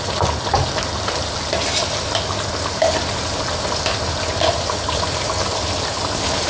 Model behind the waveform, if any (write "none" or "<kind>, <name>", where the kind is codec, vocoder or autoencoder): none